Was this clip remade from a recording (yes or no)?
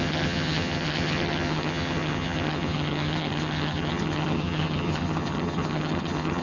yes